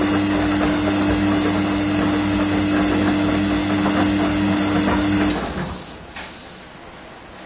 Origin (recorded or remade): recorded